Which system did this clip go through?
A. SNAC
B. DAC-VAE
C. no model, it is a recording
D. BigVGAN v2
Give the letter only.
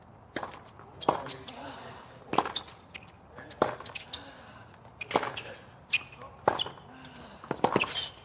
C